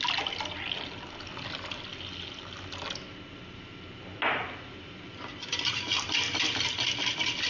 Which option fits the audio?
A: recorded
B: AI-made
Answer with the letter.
A